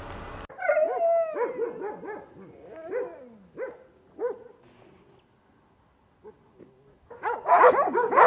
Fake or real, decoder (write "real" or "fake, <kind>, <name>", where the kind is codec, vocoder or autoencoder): real